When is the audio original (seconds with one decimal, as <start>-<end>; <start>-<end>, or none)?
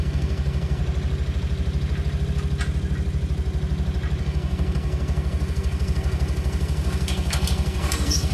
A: 0.8-4.2